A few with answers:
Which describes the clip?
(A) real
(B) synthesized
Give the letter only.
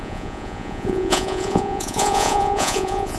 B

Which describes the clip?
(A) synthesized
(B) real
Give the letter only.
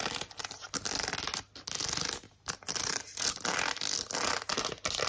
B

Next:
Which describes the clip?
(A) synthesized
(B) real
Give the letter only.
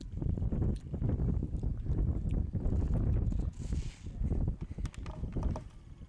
B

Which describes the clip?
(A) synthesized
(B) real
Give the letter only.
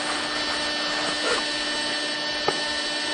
B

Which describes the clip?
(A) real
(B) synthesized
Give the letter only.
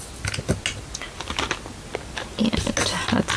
A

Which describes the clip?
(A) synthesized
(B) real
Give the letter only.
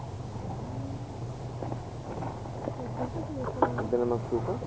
B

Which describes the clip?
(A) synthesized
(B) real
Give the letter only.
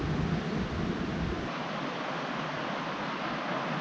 B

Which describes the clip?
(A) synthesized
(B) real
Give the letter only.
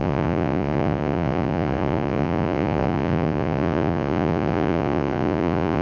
A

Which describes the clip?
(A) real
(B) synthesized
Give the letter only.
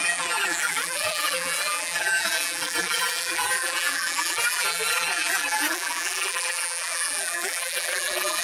B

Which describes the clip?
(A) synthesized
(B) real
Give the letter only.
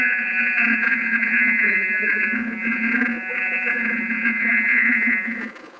A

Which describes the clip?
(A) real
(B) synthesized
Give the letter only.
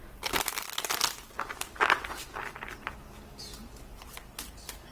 A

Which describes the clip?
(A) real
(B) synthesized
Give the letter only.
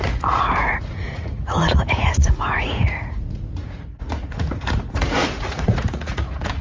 B